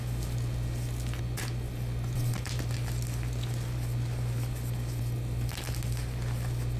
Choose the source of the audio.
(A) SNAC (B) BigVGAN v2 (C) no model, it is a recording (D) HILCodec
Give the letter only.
C